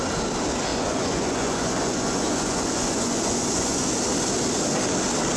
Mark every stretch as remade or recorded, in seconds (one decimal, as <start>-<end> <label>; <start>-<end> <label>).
0.0-0.7 recorded; 0.7-3.9 remade; 3.9-5.4 recorded